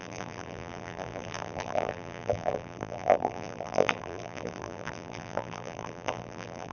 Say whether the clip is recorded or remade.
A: remade